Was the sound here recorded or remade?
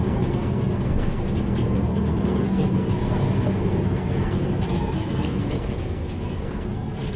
remade